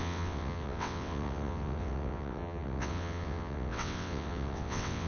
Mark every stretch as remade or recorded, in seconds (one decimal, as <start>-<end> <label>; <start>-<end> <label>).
0.0-5.1 remade